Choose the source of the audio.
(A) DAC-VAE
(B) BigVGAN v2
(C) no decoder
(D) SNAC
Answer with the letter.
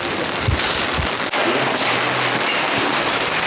C